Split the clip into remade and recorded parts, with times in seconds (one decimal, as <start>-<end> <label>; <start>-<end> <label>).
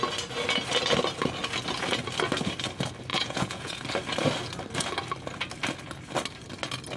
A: 0.0-3.1 recorded; 3.1-3.8 remade; 3.8-7.0 recorded